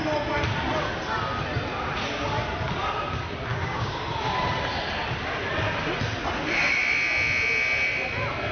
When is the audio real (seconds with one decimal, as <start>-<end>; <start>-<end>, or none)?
0.0-3.5; 4.0-8.5